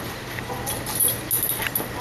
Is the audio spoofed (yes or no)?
no